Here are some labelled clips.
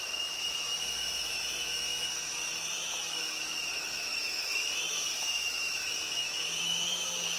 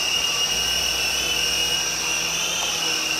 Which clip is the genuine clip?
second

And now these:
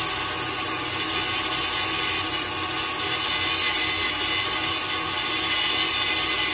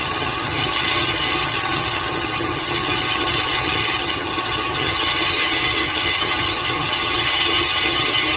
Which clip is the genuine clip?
first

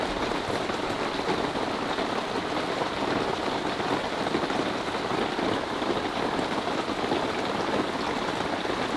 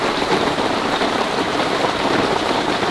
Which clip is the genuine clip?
first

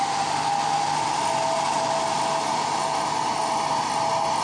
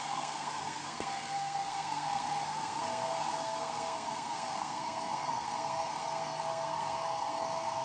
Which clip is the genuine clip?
first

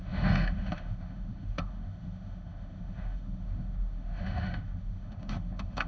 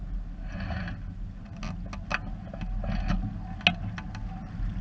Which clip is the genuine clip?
second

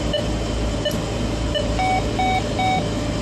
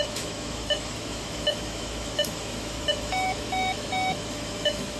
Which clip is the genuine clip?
first